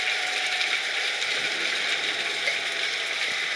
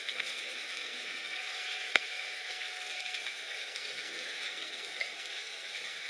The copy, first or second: second